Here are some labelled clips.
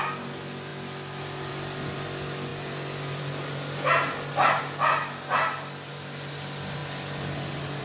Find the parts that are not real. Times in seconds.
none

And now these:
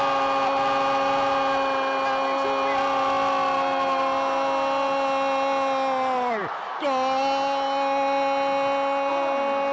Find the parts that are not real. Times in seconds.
none

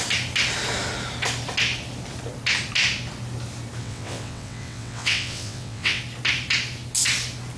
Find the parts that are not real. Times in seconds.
3.8-6.0 (vocoder, WaveNeXt)

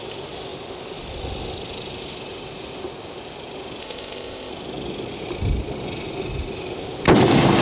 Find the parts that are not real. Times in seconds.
3.8-4.5 (codec, ZipCodec)

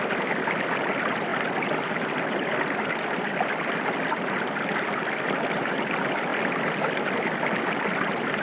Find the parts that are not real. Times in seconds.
none

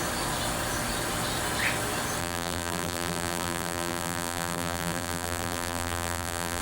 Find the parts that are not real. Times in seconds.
2.2-6.6 (vocoder, BigVGAN v2)

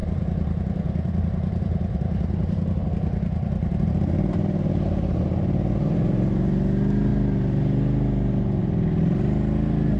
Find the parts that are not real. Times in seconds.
0.0-2.8 (vocoder, BigVGAN v2); 3.6-5.2

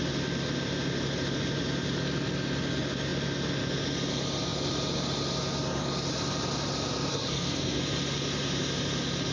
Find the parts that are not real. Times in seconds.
7.1-7.8 (codec, SNAC)